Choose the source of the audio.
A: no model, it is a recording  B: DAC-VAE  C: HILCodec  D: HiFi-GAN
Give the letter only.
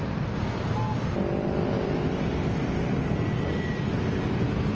A